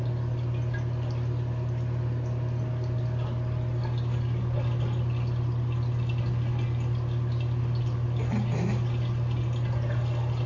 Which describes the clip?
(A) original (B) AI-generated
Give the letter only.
A